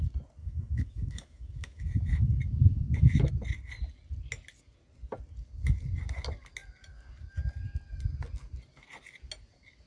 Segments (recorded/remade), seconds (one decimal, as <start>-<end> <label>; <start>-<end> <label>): 0.0-0.4 recorded; 0.4-3.3 remade; 3.3-9.9 recorded